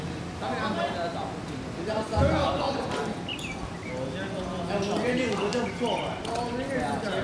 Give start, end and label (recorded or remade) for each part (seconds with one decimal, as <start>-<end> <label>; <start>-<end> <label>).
0.0-7.2 recorded